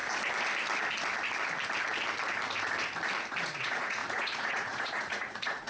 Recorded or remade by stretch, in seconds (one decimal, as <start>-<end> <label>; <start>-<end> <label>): 0.0-3.4 recorded; 3.4-5.7 remade